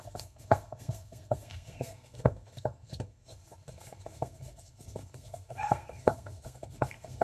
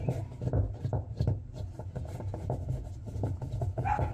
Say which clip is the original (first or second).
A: second